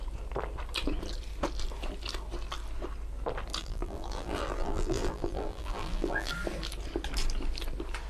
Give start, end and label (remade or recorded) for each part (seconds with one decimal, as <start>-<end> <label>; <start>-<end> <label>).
0.0-3.6 recorded; 3.6-6.3 remade; 6.3-8.1 recorded